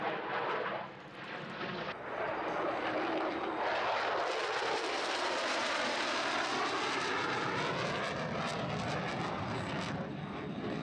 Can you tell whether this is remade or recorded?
recorded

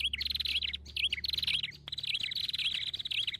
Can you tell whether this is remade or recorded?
recorded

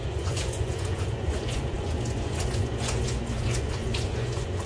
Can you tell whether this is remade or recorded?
remade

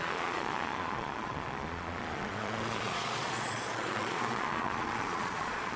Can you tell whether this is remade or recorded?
remade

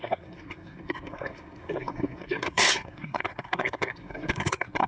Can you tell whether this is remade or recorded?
remade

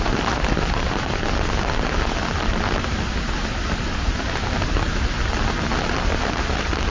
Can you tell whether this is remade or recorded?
recorded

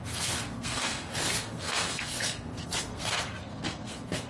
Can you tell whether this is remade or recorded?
remade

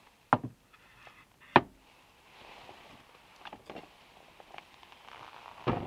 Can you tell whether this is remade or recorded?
recorded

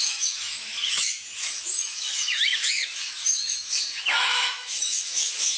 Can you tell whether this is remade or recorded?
remade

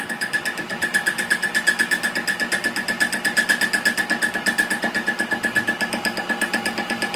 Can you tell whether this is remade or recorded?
recorded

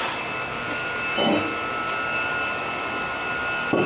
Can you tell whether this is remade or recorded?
recorded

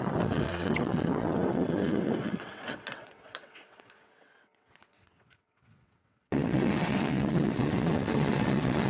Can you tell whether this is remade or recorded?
remade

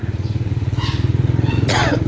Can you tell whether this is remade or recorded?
remade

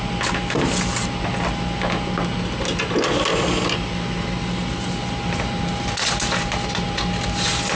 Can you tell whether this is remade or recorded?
recorded